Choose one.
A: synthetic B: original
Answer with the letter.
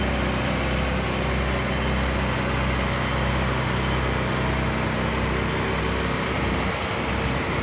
B